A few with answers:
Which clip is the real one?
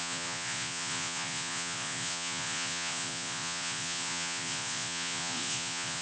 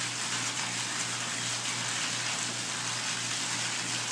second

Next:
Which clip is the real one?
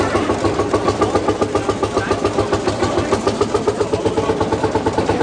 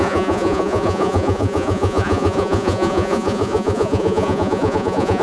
first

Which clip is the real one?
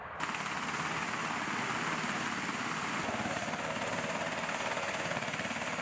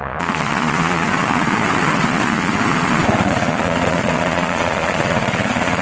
first